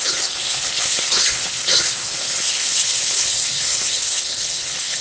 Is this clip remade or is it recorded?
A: remade